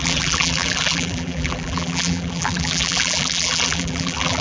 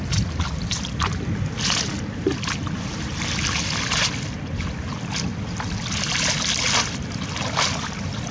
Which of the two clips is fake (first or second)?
first